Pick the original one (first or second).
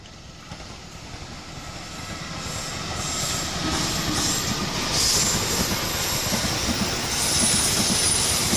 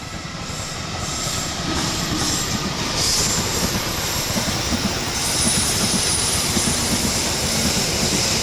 first